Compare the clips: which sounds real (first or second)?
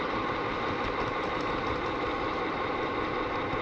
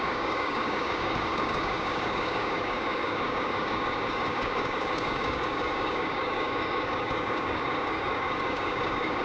first